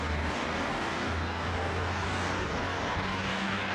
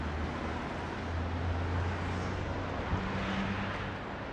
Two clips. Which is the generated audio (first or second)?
first